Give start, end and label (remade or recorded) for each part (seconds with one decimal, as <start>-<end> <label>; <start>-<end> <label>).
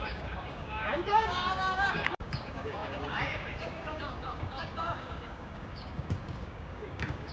0.0-7.3 remade